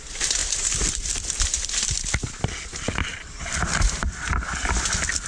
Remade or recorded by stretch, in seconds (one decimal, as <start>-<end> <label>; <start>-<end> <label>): 0.0-0.4 recorded; 0.4-1.2 remade; 1.2-5.3 recorded